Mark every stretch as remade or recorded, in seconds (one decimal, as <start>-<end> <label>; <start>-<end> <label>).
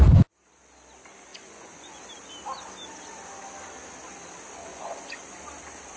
0.0-1.3 recorded; 1.3-2.0 remade; 2.0-4.7 recorded; 4.7-5.4 remade; 5.4-6.0 recorded